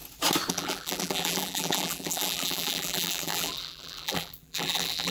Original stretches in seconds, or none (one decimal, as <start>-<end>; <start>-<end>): 0.0-0.5